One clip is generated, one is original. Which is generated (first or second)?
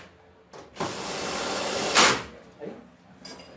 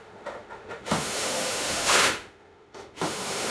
second